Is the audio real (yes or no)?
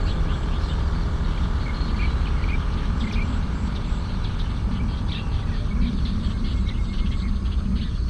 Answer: yes